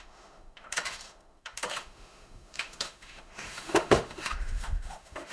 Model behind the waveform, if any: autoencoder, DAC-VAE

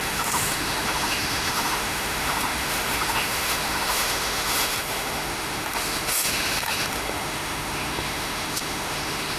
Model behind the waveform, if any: autoencoder, DAC-VAE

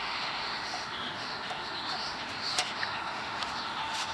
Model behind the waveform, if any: autoencoder, DAC-VAE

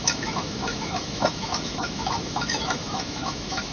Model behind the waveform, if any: autoencoder, DAC-VAE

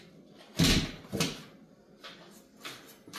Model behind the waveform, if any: none